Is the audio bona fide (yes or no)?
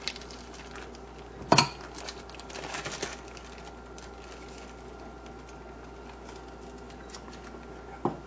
yes